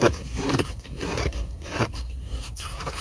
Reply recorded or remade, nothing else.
remade